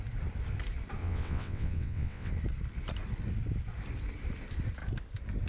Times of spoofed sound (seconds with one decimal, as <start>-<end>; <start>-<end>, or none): 1.0-2.3

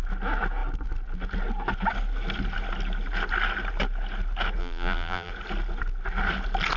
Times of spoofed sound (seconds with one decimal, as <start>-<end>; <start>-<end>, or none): 4.6-5.3

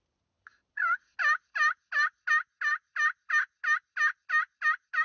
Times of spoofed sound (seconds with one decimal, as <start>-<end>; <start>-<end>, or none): none

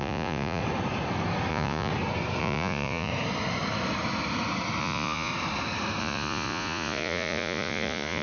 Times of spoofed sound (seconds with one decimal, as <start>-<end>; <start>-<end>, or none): 0.0-0.6; 1.5-1.9; 2.4-3.1; 4.8-5.3; 6.0-8.2

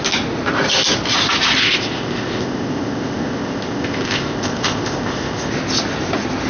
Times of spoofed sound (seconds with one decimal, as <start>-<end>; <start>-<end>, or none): 1.6-5.5

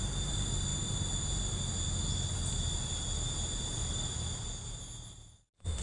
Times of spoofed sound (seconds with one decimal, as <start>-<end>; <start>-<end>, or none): none

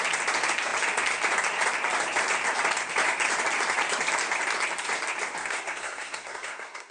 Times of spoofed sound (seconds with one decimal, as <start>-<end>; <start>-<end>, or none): 5.4-6.9

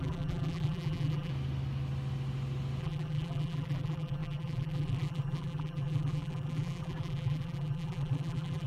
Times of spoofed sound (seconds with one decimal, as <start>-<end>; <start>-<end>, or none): 0.0-1.3; 2.8-8.7